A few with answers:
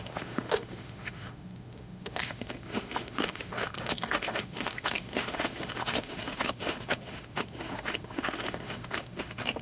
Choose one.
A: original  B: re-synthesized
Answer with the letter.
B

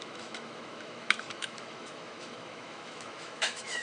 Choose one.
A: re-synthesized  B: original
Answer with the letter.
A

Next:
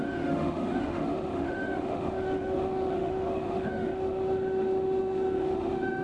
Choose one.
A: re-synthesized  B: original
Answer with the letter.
A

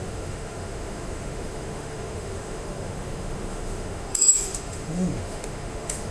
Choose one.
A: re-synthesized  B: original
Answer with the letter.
A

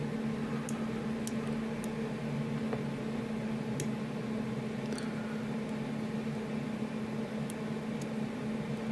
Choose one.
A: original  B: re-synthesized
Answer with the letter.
A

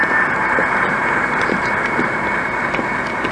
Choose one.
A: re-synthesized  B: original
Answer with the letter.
B